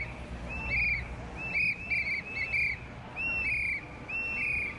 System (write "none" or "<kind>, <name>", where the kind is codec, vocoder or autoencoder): none